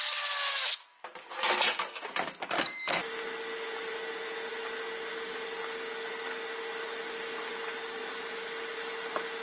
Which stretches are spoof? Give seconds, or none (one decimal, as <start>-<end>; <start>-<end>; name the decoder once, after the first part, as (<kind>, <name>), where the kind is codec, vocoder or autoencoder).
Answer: none